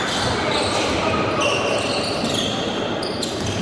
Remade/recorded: recorded